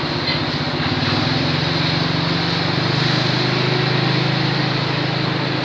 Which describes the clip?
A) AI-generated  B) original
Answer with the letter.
A